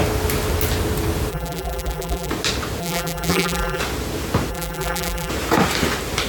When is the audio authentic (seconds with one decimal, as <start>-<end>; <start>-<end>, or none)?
0.0-1.3; 2.3-2.8; 3.8-4.5; 5.3-6.3